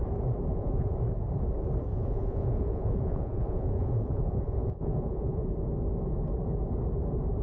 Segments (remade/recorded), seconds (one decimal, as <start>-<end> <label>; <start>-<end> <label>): 0.0-0.5 recorded; 0.5-1.0 remade; 1.0-1.9 recorded; 1.9-5.5 remade; 5.5-7.4 recorded